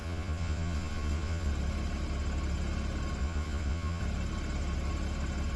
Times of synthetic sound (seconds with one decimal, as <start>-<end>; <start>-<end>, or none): 0.0-1.5; 3.2-4.0